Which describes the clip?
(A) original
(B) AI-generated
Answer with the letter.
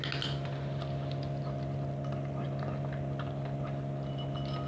A